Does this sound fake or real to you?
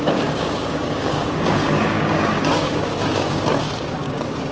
fake